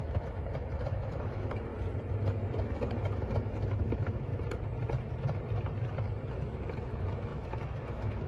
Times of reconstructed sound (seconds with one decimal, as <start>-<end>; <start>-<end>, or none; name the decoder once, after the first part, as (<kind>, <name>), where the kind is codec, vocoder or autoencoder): 0.0-1.7 (autoencoder, DAC-VAE); 2.7-4.3; 6.3-8.3